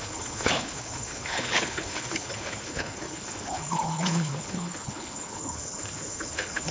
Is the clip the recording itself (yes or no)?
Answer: no